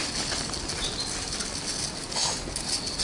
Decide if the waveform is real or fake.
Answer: real